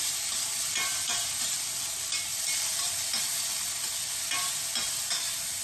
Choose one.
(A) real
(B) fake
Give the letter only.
A